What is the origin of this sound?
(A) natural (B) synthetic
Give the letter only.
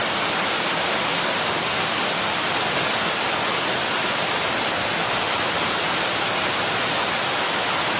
A